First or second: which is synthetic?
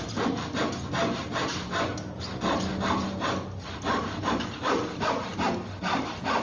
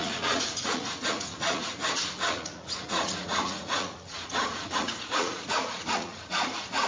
second